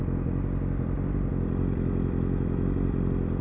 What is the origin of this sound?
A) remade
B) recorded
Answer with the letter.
B